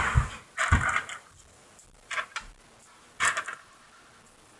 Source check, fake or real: real